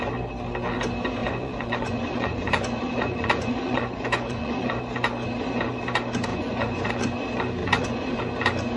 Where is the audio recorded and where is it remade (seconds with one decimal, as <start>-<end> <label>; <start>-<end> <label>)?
0.0-1.2 recorded; 1.2-4.8 remade; 4.8-6.3 recorded; 6.3-6.9 remade; 6.9-7.6 recorded; 7.6-8.2 remade; 8.2-8.8 recorded